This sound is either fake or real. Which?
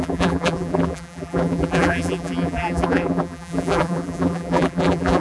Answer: fake